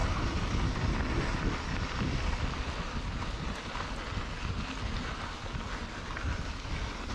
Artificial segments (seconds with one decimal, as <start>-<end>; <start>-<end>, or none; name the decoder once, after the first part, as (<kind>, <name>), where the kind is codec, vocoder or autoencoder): none